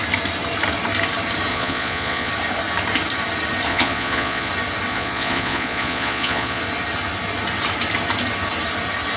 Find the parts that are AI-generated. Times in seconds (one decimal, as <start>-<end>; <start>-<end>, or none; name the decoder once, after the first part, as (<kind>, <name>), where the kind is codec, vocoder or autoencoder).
1.5-2.3 (vocoder, Vocos); 3.7-4.5; 4.9-6.6